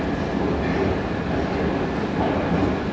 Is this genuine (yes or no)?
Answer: yes